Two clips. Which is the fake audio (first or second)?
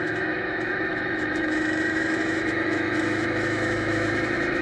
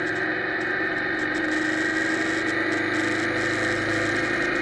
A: first